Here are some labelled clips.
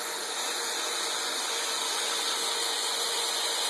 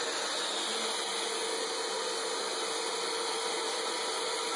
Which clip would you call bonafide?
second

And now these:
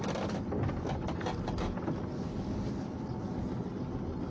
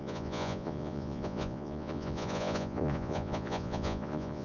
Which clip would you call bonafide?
first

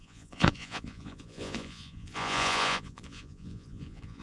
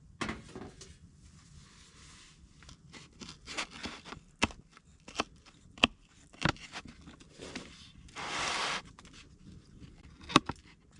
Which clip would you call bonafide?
second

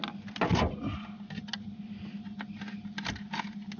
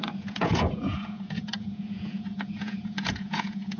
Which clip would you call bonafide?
first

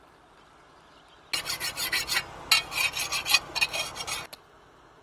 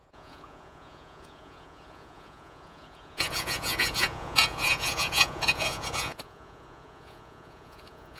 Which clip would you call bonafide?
first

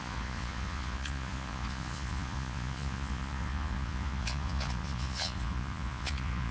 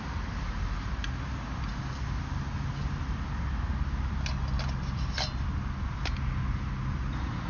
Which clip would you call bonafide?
second